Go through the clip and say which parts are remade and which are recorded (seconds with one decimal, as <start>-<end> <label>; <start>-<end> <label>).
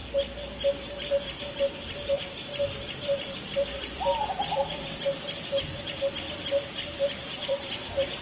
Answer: 0.0-1.1 recorded; 1.1-8.2 remade